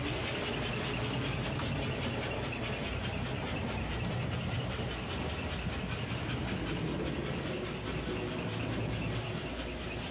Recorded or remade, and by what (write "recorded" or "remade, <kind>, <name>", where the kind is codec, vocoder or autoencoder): recorded